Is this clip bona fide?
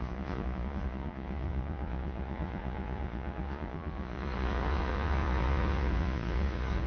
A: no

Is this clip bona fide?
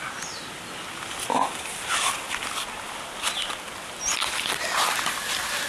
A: yes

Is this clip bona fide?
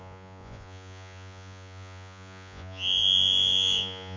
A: no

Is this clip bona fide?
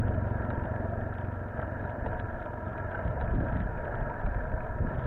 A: yes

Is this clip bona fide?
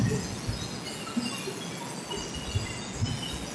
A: yes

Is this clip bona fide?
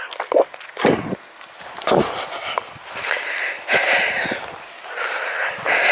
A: yes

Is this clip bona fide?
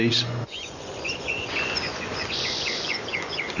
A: no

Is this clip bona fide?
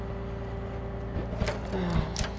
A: yes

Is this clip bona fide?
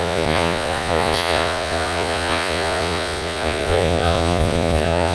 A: no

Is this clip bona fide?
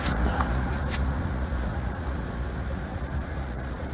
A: no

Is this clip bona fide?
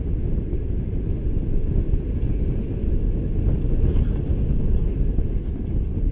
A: yes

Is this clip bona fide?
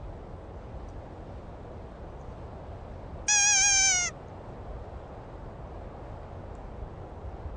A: yes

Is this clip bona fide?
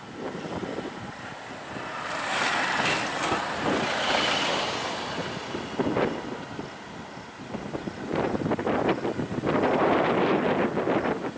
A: yes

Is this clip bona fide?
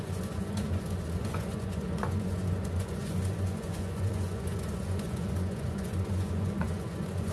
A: no